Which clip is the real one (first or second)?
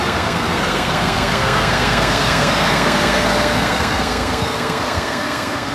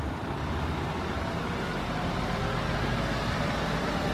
second